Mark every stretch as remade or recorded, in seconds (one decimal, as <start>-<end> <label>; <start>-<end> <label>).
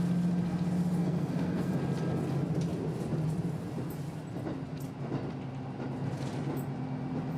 0.0-1.0 recorded; 1.0-1.7 remade; 1.7-7.4 recorded